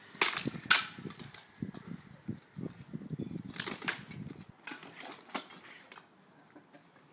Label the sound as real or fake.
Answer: real